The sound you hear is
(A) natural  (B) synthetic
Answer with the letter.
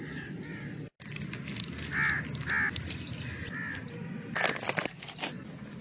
A